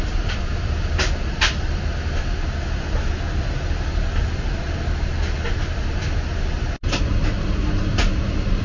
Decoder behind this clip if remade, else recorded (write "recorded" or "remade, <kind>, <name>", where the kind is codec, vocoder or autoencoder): recorded